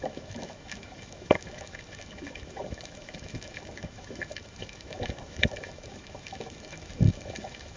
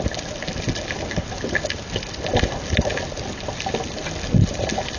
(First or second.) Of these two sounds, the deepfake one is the first